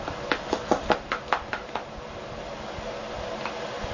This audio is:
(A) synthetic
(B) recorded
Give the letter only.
B